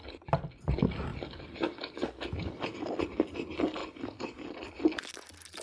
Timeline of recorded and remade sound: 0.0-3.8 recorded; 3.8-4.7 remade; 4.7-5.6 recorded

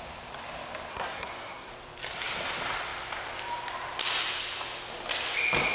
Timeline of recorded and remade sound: 0.0-0.9 recorded; 0.9-1.7 remade; 1.7-5.7 recorded